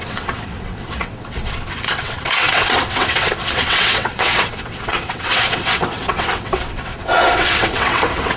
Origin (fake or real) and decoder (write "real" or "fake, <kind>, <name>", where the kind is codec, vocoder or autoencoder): fake, vocoder, WaveNeXt